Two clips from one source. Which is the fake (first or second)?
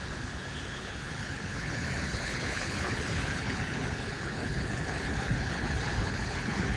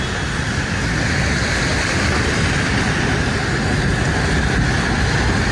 first